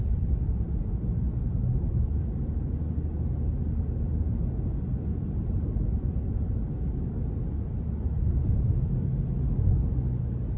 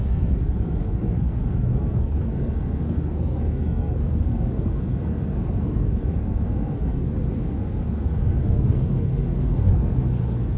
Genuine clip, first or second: first